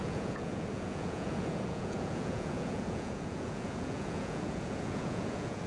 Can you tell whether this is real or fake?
fake